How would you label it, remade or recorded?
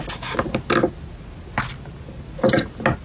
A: recorded